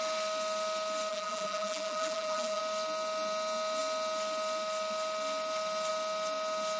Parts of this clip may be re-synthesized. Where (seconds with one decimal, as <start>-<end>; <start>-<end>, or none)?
1.1-2.6